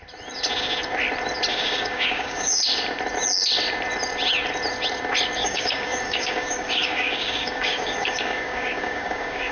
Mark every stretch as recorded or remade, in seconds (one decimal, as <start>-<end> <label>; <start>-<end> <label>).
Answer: 0.0-1.5 recorded; 1.5-2.6 remade; 2.6-5.4 recorded; 5.4-9.5 remade